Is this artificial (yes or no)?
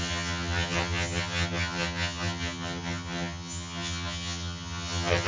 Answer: yes